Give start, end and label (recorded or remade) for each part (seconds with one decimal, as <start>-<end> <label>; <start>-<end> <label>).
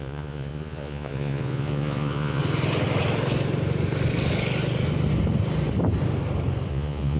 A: 0.0-2.4 remade; 2.4-6.7 recorded; 6.7-7.2 remade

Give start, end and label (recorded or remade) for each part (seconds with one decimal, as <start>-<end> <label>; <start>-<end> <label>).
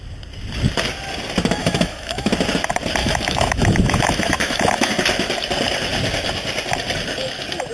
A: 0.0-1.6 recorded; 1.6-2.3 remade; 2.3-3.0 recorded; 3.0-4.9 remade; 4.9-7.7 recorded